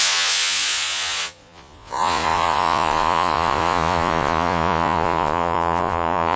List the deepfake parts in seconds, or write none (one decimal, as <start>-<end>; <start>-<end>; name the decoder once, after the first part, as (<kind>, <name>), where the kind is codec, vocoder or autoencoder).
0.0-6.4 (vocoder, Vocos)